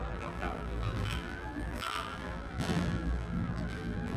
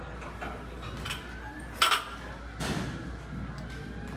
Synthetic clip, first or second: first